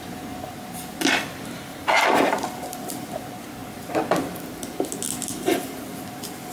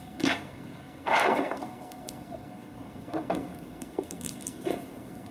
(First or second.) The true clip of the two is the first